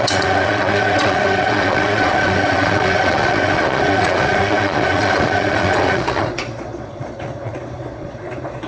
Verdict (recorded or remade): remade